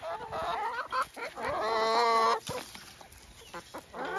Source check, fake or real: real